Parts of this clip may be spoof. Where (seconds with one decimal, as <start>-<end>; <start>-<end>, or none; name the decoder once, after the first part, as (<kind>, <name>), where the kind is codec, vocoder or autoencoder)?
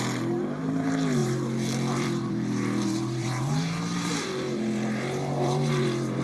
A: 0.0-6.2 (vocoder, BigVGAN v2)